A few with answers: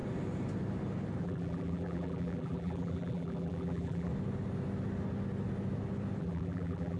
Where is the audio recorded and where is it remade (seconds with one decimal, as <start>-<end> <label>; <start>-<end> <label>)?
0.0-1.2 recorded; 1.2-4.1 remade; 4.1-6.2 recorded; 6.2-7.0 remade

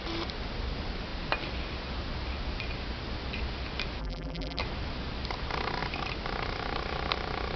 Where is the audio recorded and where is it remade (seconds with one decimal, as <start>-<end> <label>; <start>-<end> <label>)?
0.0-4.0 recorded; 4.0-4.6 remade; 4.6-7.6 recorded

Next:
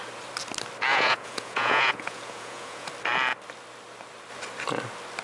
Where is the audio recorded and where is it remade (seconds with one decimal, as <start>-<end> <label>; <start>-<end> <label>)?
0.0-0.9 recorded; 0.9-2.9 remade; 2.9-5.2 recorded

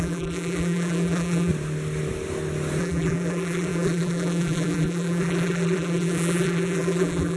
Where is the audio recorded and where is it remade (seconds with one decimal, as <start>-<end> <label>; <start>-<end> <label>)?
0.0-1.5 remade; 1.5-2.8 recorded; 2.8-7.4 remade

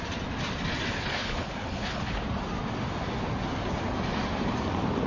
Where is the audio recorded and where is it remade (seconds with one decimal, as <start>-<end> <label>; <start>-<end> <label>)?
0.0-1.1 recorded; 1.1-2.2 remade; 2.2-5.1 recorded